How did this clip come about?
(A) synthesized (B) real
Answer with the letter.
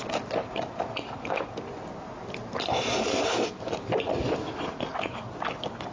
B